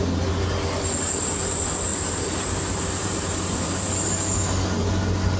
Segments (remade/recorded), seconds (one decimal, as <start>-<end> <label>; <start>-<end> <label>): 0.0-1.9 recorded; 1.9-4.1 remade; 4.1-5.4 recorded